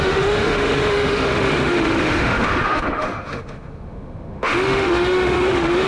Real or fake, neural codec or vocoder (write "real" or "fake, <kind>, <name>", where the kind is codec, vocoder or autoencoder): fake, autoencoder, DAC-VAE